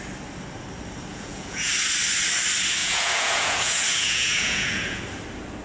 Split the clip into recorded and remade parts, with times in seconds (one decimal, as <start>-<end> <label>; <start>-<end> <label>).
0.0-1.1 recorded; 1.1-1.7 remade; 1.7-2.8 recorded; 2.8-5.0 remade; 5.0-5.6 recorded